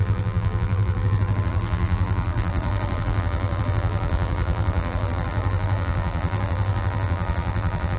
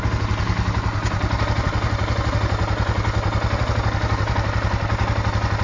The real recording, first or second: second